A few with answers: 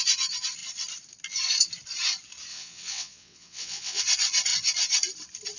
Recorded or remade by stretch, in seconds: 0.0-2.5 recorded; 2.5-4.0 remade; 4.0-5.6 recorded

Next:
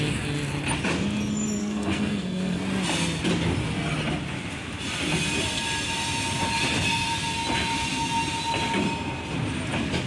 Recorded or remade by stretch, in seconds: 0.0-1.6 recorded; 1.6-2.6 remade; 2.6-10.1 recorded

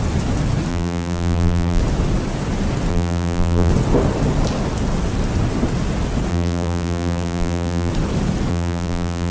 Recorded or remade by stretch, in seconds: 0.0-0.7 recorded; 0.7-1.8 remade; 1.8-2.9 recorded; 2.9-3.7 remade; 3.7-6.3 recorded; 6.3-7.9 remade; 7.9-8.5 recorded; 8.5-9.3 remade

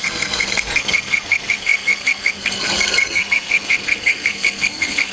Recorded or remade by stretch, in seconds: 0.0-5.1 remade